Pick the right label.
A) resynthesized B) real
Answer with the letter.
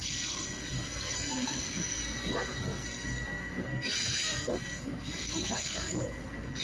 A